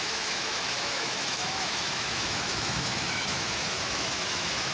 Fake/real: fake